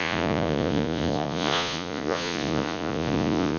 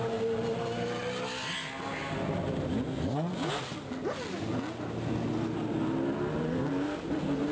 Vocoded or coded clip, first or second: first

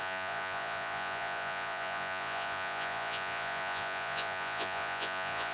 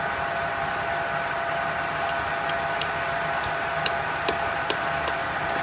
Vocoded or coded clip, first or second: first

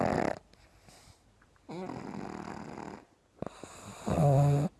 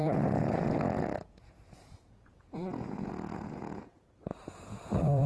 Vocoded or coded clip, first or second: second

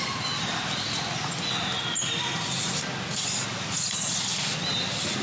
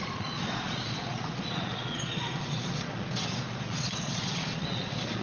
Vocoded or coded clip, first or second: second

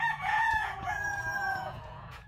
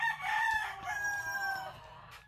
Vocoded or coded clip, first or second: first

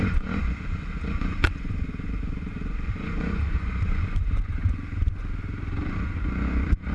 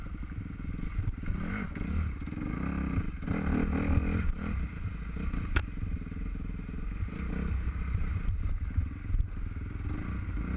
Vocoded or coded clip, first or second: first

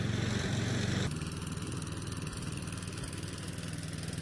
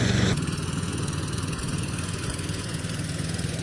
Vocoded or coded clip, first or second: second